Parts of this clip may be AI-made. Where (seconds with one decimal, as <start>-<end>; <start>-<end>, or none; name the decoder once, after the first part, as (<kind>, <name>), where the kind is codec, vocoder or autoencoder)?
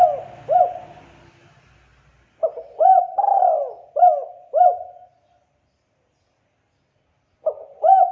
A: none